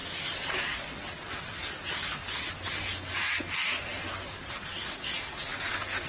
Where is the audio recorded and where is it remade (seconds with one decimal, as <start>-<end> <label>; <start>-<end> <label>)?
0.0-6.1 recorded